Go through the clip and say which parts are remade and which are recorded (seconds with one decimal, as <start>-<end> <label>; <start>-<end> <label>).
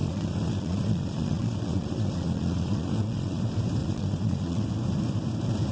0.0-3.4 remade; 3.4-3.8 recorded; 3.8-4.6 remade; 4.6-5.7 recorded